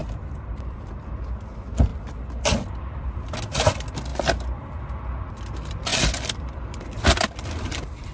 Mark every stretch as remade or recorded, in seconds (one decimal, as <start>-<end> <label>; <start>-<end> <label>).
0.0-1.9 remade; 1.9-2.4 recorded; 2.4-4.1 remade; 4.1-5.4 recorded; 5.4-8.1 remade